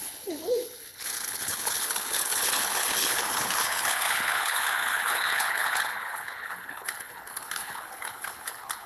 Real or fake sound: fake